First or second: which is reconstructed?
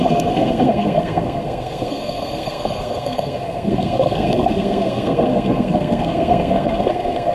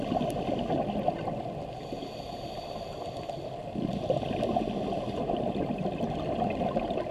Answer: first